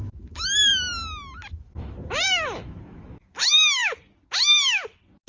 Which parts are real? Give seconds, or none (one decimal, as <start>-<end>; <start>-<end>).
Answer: 0.7-1.5; 3.8-5.3